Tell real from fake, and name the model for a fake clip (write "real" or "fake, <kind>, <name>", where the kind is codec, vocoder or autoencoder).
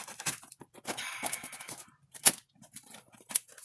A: real